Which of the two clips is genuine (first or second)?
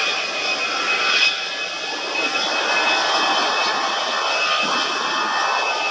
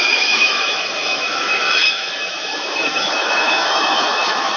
first